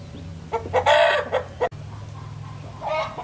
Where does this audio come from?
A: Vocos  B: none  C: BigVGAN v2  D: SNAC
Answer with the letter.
B